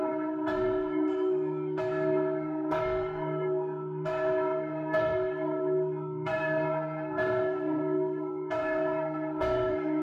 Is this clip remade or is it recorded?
remade